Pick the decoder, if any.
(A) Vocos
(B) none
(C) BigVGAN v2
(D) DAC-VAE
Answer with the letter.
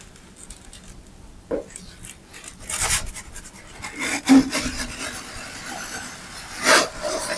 B